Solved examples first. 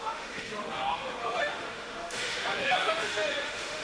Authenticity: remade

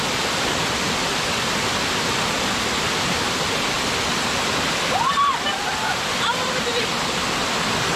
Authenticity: recorded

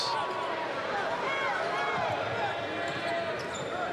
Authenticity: recorded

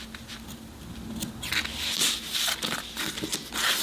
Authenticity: recorded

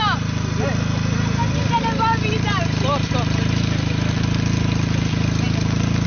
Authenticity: recorded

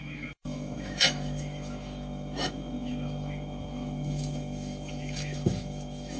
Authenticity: remade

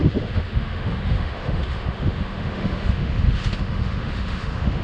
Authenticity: remade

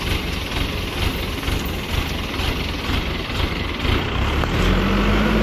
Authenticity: recorded